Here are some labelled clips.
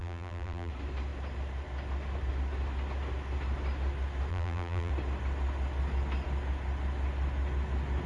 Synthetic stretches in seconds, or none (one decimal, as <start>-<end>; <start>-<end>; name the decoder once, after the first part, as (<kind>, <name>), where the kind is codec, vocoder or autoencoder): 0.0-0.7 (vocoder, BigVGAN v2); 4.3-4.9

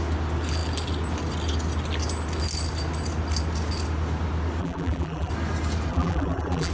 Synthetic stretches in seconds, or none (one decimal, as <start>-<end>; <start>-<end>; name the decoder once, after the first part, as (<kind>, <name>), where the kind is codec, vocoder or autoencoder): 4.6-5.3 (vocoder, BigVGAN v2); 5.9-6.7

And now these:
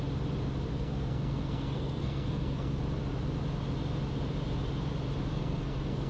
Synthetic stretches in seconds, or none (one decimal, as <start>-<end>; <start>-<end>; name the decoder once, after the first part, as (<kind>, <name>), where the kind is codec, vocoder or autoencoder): 0.7-2.8 (codec, SNAC); 5.3-6.1